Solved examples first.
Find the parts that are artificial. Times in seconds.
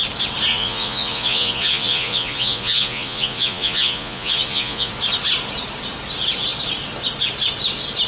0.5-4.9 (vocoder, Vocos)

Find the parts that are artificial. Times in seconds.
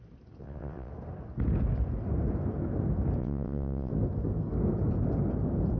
0.4-0.9 (vocoder, WaveNeXt); 3.2-3.9